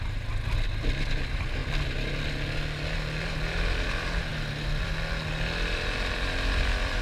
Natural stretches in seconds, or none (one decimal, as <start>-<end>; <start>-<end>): 0.0-7.0